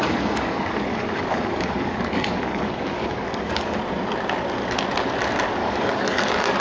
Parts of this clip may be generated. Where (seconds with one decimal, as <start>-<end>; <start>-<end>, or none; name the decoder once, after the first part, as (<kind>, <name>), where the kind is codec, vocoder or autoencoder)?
0.0-3.8 (codec, DAC); 5.6-6.6